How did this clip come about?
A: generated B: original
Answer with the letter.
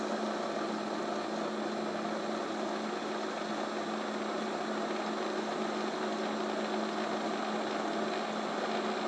B